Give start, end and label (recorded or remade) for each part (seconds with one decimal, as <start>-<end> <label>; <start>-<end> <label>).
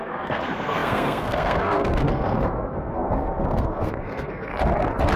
0.0-4.5 remade; 4.5-5.2 recorded